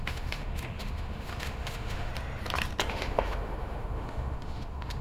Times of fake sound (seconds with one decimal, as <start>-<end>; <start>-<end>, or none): 0.0-2.1; 2.9-5.0